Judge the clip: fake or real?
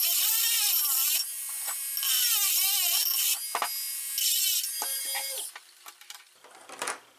real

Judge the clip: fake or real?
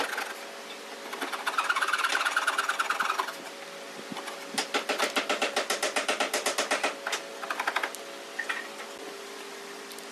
real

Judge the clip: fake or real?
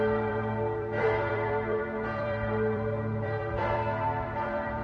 fake